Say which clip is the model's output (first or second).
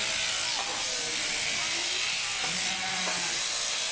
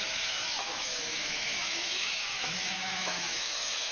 second